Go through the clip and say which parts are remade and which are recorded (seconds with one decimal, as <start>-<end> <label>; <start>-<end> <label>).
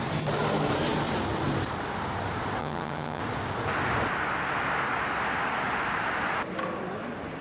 0.0-2.6 recorded; 2.6-3.2 remade; 3.2-7.4 recorded